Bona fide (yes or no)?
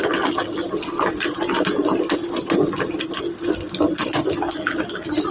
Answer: yes